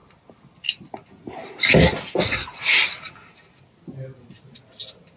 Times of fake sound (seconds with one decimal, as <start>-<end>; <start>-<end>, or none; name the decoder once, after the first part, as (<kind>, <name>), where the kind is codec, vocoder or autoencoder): none